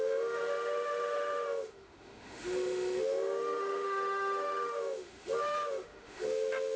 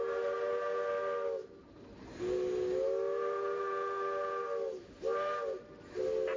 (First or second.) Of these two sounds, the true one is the second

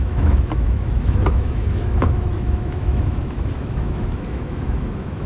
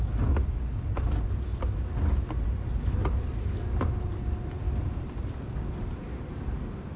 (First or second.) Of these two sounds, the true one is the second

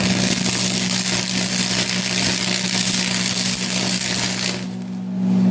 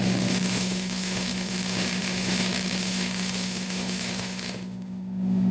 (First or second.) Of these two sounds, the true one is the first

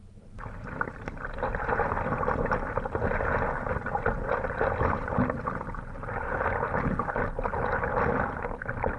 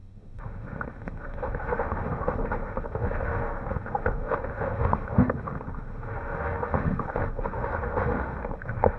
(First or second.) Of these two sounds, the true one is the first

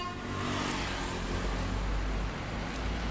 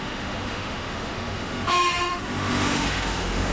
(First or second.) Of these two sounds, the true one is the first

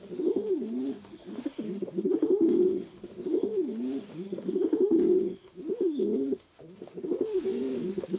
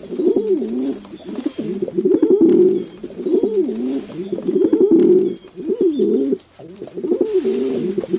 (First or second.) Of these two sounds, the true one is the second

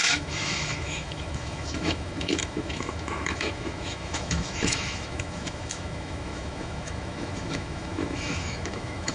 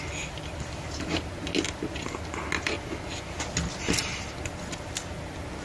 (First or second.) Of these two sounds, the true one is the second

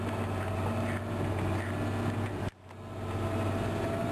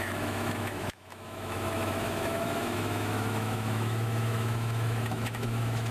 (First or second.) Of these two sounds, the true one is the first